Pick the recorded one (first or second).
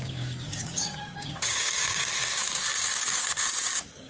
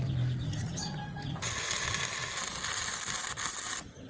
second